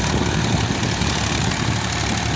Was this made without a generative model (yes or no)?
no